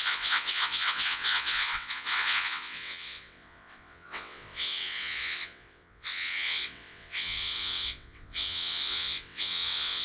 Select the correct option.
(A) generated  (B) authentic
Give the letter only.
A